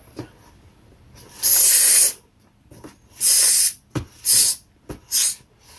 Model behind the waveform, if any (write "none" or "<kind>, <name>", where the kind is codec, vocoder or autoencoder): none